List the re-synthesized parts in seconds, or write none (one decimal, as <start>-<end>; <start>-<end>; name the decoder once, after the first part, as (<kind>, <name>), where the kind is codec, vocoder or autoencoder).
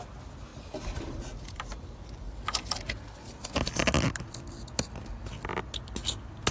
none